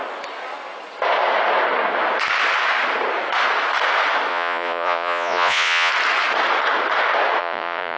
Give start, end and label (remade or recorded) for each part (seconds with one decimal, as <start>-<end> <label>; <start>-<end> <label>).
0.0-4.3 recorded; 4.3-5.9 remade; 5.9-7.4 recorded; 7.4-8.0 remade